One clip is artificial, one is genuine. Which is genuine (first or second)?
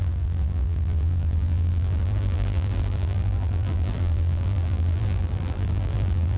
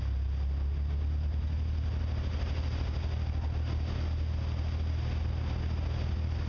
second